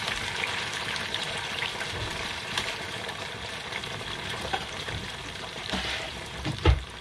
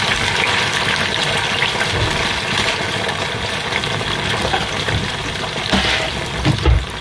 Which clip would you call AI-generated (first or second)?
first